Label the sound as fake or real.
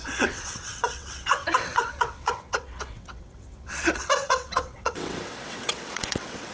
fake